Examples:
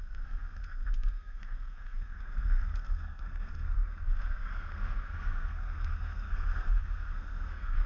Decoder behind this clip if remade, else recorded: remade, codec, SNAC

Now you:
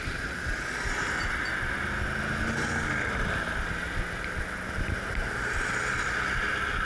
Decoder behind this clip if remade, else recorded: recorded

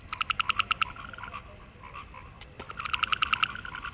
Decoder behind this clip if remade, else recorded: recorded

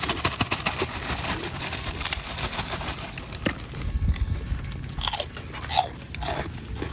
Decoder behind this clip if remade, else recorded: recorded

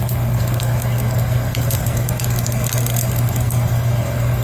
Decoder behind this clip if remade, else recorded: remade, codec, SNAC